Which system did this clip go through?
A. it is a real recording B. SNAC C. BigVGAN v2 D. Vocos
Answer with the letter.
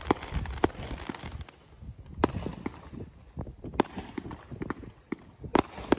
A